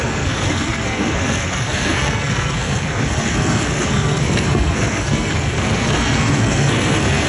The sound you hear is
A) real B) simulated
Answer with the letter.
B